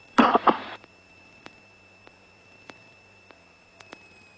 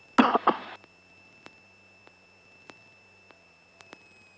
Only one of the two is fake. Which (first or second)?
first